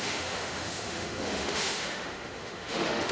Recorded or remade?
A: remade